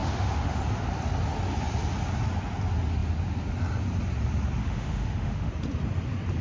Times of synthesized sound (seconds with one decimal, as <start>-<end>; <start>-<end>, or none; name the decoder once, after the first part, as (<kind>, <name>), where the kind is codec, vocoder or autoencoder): 0.0-0.6 (autoencoder, DAC-VAE); 4.6-5.5